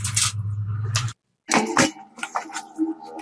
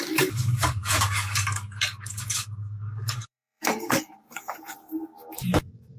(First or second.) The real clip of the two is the first